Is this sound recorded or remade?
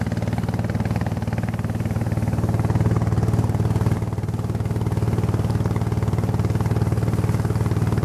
recorded